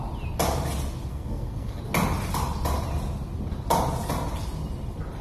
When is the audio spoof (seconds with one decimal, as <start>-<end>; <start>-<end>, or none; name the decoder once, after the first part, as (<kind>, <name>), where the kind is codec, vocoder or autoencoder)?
1.1-1.8 (codec, SNAC)